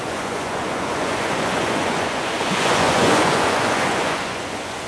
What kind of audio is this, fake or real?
fake